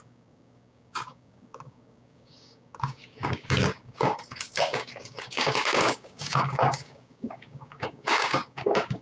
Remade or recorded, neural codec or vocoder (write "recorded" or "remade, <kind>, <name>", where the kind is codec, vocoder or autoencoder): remade, codec, DAC